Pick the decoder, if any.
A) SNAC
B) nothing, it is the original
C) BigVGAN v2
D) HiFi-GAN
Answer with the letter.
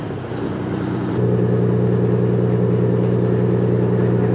B